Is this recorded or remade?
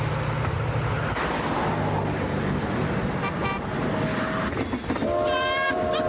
recorded